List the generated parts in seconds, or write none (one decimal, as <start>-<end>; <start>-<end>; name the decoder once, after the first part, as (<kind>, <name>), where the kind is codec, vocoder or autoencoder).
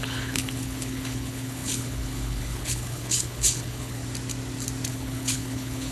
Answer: 0.0-4.0 (codec, HILCodec); 4.9-5.9